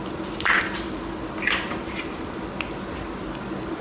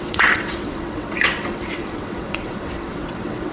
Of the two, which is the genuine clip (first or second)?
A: first